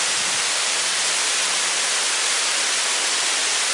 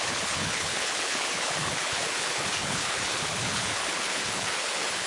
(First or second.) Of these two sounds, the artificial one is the second